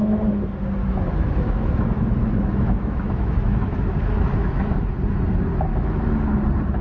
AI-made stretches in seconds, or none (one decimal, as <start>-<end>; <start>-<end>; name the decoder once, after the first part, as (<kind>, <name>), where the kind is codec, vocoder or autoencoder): 0.8-4.9 (autoencoder, DAC-VAE); 5.7-6.3